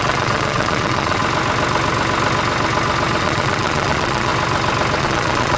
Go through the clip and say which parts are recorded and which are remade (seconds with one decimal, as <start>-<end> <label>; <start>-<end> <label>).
0.0-1.2 remade; 1.2-3.2 recorded; 3.2-4.3 remade; 4.3-5.0 recorded; 5.0-5.6 remade